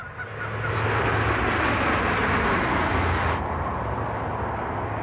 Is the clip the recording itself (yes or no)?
yes